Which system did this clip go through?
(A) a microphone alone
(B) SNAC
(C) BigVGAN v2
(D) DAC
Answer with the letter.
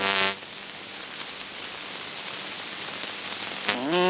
A